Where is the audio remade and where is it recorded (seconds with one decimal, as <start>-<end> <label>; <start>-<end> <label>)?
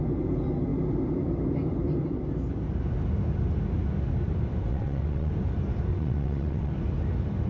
0.0-4.7 recorded; 4.7-5.3 remade; 5.3-5.9 recorded; 5.9-6.7 remade; 6.7-7.5 recorded